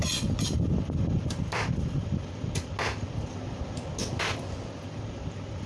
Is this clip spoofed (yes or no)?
no